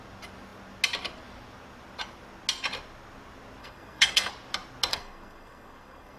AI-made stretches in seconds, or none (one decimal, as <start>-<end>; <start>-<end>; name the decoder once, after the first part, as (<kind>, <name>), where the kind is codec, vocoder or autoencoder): 3.6-4.3 (codec, SNAC); 4.9-6.2